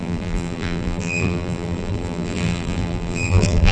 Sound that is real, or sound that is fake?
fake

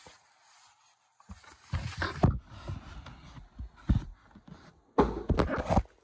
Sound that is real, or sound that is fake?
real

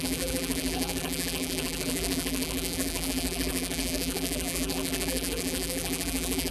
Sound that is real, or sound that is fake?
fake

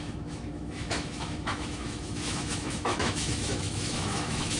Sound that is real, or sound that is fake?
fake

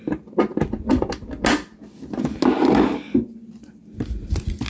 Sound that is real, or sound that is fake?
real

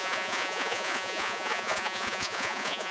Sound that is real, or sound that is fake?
fake